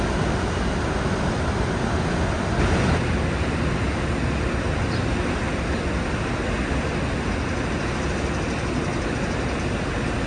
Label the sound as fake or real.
real